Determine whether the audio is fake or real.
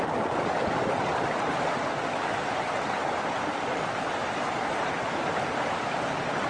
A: real